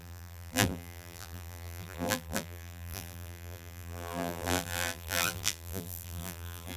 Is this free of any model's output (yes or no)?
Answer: no